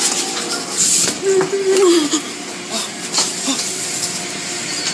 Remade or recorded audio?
recorded